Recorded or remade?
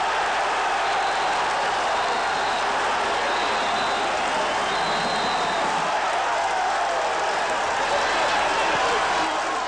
recorded